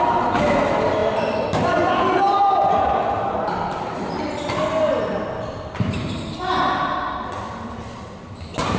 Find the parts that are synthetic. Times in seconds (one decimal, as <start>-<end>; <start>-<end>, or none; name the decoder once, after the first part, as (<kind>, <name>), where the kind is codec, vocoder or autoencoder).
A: none